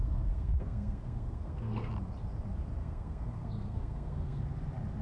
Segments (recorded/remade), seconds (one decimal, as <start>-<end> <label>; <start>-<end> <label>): 0.0-1.9 remade; 1.9-2.8 recorded; 2.8-4.4 remade; 4.4-5.0 recorded